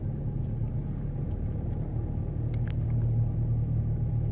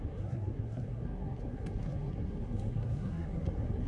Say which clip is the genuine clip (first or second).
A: first